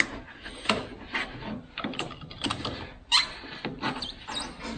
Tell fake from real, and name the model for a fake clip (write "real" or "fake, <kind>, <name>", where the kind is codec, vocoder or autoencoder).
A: real